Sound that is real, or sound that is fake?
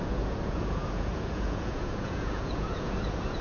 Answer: fake